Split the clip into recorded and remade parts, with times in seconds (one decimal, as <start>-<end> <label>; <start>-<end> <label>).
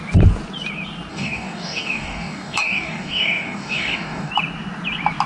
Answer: 0.0-1.1 recorded; 1.1-4.3 remade; 4.3-5.3 recorded